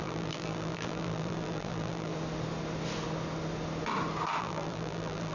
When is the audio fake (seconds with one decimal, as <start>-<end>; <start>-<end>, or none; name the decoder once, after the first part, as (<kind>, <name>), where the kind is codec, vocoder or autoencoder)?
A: 0.0-2.1 (vocoder, BigVGAN v2); 4.4-5.3

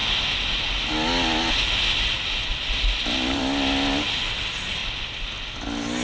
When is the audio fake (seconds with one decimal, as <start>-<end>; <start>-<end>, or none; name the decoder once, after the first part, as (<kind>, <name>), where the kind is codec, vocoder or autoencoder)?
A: 2.1-3.4 (vocoder, BigVGAN v2); 4.8-5.3